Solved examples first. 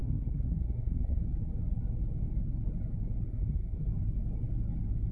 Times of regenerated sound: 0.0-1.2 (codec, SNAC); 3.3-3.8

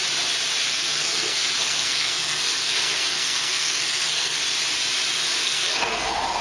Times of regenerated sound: 0.6-4.4 (codec, SNAC); 5.4-6.4

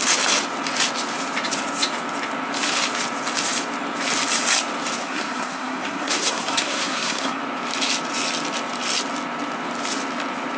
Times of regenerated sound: 5.0-7.4 (codec, SNAC)